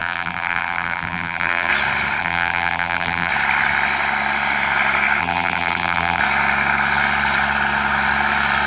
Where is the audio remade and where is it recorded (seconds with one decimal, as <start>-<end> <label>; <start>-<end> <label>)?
0.0-1.7 remade; 1.7-2.2 recorded; 2.2-3.3 remade; 3.3-5.2 recorded; 5.2-6.2 remade; 6.2-8.7 recorded